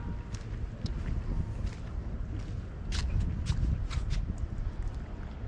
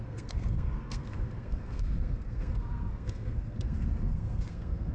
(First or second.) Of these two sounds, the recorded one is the first